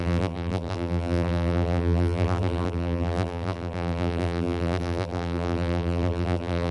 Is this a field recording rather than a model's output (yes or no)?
no